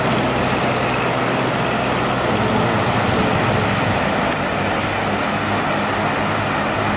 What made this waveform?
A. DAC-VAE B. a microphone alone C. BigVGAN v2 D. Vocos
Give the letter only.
B